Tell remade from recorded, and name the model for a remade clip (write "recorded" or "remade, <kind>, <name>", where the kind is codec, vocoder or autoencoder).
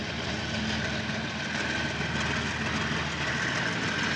recorded